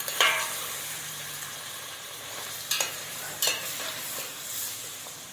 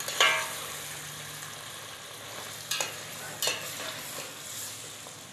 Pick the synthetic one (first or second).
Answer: first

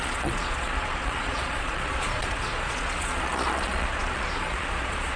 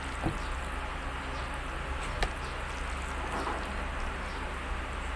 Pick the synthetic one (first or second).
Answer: first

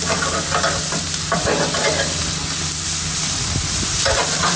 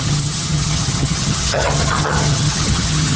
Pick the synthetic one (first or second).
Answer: second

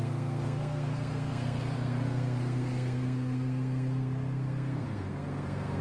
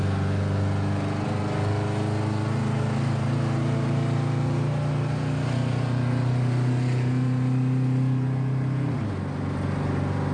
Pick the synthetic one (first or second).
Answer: first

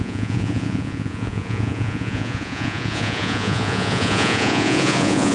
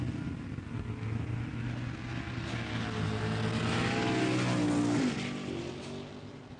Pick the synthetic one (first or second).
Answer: first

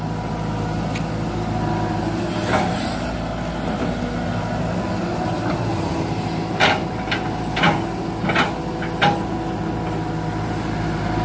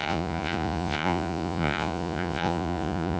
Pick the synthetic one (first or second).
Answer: second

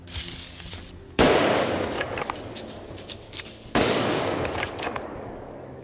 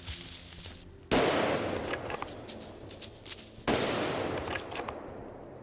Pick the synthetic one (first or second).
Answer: first